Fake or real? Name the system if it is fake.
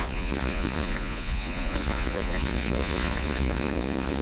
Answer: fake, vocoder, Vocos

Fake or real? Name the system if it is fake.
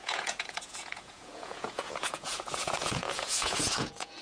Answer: fake, vocoder, Vocos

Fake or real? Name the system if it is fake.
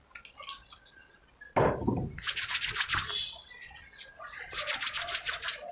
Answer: real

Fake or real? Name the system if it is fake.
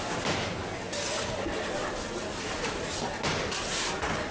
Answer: real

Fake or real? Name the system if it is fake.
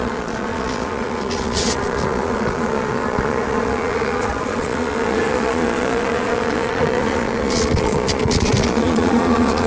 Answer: fake, vocoder, Vocos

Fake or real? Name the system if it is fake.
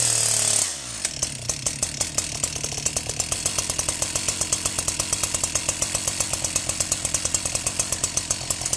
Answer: real